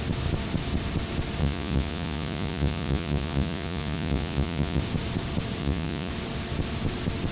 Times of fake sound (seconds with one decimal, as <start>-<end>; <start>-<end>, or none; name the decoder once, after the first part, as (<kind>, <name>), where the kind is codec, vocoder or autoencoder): 1.4-4.8 (vocoder, Vocos); 5.6-6.1

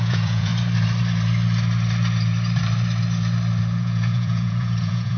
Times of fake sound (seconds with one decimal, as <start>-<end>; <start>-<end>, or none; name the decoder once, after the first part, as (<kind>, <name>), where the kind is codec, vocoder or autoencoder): 0.0-0.5 (vocoder, Vocos); 3.6-5.2

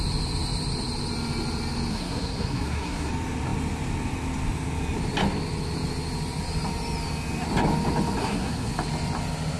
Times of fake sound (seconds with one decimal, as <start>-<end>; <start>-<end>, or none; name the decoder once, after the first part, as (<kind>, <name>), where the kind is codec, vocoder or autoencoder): 1.9-3.1 (codec, SNAC); 8.2-8.7

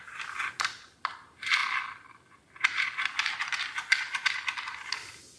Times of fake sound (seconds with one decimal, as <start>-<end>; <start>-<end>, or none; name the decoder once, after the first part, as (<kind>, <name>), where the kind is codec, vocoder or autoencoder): 0.0-1.6 (vocoder, BigVGAN v2); 3.6-5.4